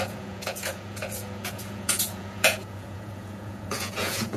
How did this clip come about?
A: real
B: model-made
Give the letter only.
B